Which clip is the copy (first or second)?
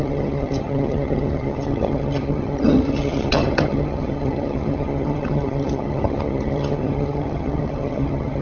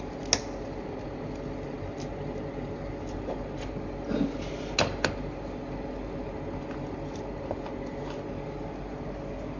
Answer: first